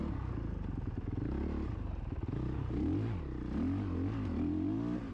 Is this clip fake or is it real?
real